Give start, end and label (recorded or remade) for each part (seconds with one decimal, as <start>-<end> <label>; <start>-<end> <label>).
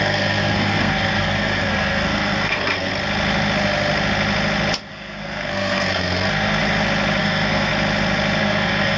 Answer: 0.0-2.9 remade; 2.9-4.9 recorded; 4.9-6.6 remade; 6.6-7.2 recorded; 7.2-7.7 remade; 7.7-8.4 recorded; 8.4-9.0 remade